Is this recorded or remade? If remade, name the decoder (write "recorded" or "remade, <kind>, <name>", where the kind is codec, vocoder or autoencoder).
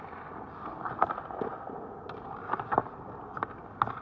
recorded